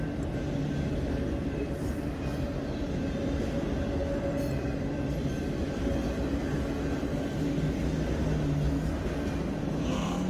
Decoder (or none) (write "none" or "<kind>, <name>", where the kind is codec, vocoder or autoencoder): none